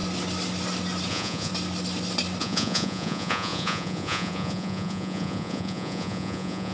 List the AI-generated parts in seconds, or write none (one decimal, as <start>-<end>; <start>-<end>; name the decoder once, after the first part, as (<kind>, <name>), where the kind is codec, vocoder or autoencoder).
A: 1.1-1.5 (vocoder, Vocos); 2.4-6.7